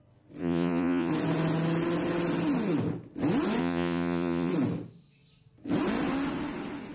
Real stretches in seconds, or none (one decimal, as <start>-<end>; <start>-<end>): 0.0-0.4; 1.1-3.6; 4.5-6.9